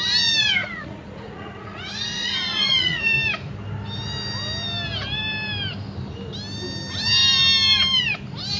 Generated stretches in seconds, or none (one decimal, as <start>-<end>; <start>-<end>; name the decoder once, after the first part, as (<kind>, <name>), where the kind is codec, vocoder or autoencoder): 0.6-3.0 (vocoder, Vocos)